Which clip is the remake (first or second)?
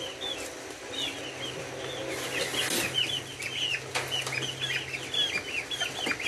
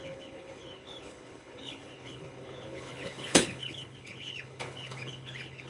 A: second